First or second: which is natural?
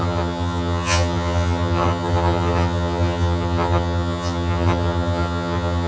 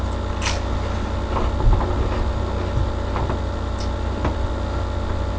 second